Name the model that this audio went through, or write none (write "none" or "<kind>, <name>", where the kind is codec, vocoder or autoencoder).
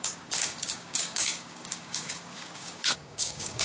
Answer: codec, DAC